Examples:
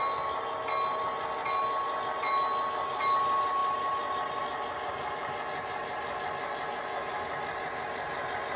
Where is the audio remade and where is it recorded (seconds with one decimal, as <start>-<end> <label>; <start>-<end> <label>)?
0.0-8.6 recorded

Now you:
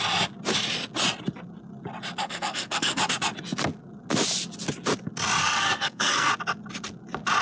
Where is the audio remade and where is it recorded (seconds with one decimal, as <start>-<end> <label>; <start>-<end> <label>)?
0.0-2.2 recorded; 2.2-3.0 remade; 3.0-5.4 recorded; 5.4-6.3 remade; 6.3-7.4 recorded

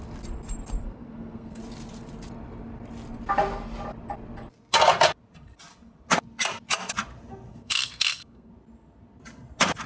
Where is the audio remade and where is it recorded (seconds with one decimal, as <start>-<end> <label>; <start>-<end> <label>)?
0.0-0.8 recorded; 0.8-1.6 remade; 1.6-7.5 recorded; 7.5-8.5 remade; 8.5-9.9 recorded

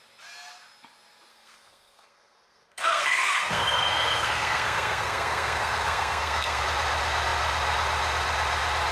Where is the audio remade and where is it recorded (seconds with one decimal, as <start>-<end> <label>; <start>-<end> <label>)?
0.0-1.3 recorded; 1.3-6.6 remade; 6.6-8.9 recorded